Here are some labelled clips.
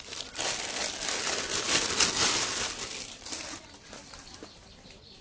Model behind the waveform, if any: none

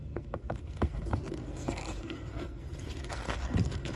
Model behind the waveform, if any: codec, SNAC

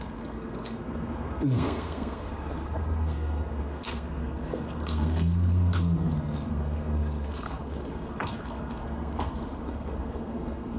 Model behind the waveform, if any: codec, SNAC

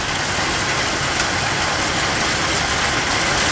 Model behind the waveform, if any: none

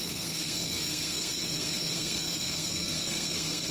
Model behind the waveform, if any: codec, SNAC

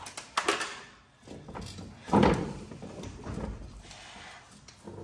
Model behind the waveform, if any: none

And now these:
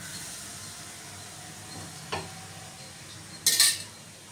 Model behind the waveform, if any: none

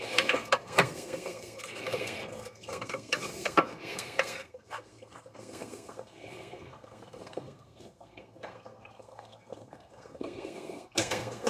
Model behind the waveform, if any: codec, SNAC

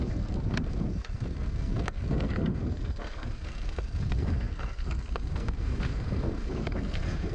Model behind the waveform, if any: codec, SNAC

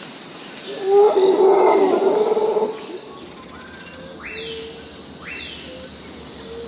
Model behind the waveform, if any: none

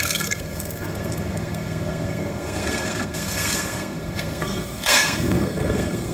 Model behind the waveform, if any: codec, SNAC